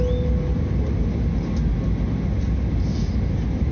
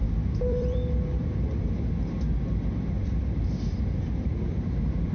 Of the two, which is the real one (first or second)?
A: first